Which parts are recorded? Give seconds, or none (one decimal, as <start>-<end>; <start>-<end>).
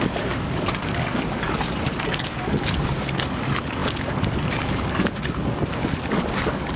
none